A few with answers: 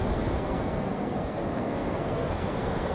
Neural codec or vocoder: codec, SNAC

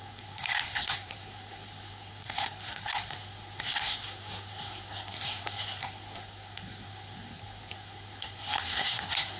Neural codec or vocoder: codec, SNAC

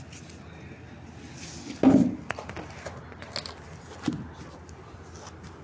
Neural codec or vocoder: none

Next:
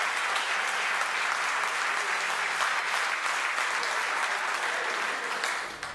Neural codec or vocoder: none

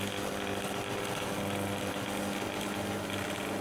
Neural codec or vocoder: none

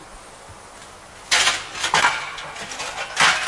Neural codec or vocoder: none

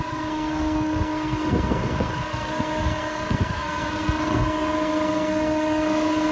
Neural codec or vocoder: codec, SNAC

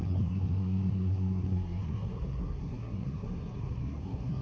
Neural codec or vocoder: codec, SNAC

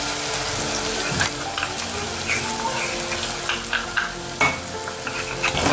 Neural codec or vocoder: none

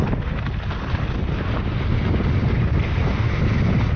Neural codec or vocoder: none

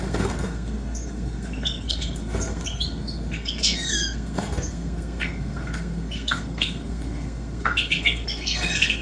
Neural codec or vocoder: codec, SNAC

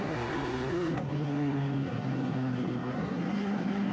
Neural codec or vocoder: codec, SNAC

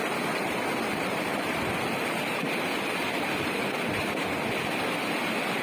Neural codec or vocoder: none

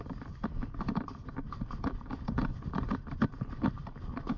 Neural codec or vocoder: none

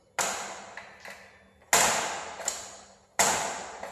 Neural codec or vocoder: none